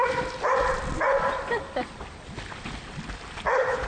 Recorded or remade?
remade